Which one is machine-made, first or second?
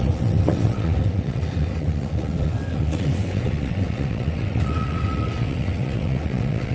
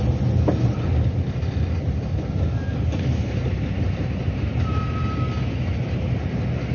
first